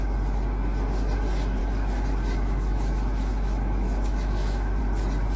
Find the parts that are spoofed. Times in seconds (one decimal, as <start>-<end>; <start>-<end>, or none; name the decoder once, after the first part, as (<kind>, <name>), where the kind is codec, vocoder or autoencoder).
1.6-4.8 (autoencoder, DAC-VAE)